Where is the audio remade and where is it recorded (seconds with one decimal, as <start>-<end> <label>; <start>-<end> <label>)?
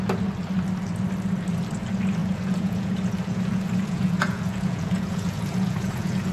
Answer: 0.0-2.2 recorded; 2.2-6.3 remade